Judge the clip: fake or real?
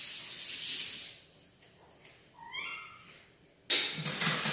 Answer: real